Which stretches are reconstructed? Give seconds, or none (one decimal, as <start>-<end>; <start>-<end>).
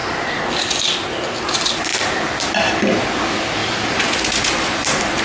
none